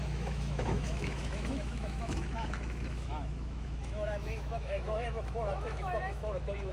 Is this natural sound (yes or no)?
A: no